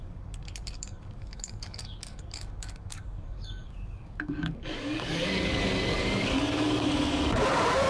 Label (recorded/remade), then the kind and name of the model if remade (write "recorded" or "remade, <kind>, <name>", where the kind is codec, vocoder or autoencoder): remade, codec, DAC